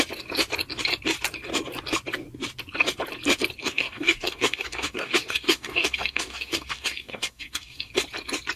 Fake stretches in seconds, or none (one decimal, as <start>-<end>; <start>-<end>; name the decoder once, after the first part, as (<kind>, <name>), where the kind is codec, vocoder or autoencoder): 3.6-7.9 (codec, DAC)